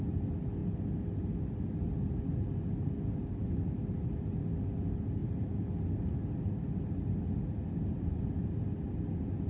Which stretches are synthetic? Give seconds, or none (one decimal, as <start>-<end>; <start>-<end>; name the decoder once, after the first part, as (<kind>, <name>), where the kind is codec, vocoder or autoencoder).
none